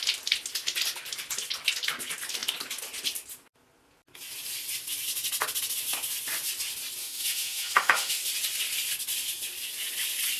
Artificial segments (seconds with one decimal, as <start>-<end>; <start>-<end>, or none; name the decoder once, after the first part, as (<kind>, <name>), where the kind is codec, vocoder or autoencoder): 7.0-8.2 (autoencoder, DAC-VAE)